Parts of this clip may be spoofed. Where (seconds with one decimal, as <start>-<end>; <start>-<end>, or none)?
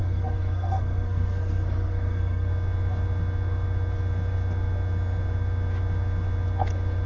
0.0-2.5